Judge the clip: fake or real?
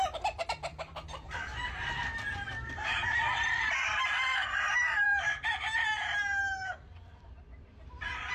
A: fake